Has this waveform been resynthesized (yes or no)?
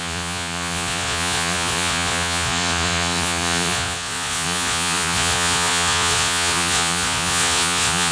yes